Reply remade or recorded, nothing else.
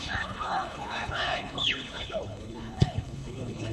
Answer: remade